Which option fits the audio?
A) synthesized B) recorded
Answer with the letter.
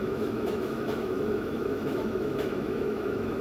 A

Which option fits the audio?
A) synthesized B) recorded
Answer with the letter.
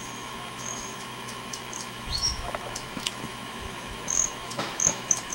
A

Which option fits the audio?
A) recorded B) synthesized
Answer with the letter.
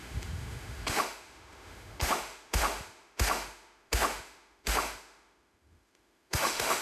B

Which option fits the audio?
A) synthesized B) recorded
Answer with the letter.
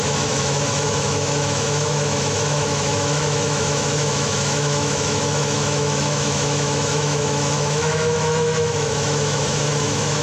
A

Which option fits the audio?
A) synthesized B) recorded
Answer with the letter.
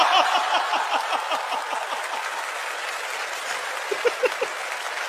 B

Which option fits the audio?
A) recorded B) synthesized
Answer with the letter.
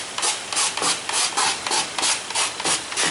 A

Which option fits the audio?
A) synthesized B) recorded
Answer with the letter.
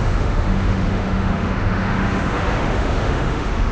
A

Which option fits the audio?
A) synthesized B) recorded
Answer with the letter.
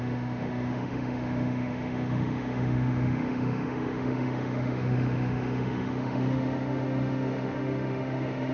A